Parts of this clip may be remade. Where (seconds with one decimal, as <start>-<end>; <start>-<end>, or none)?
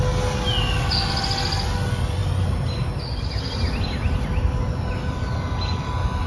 none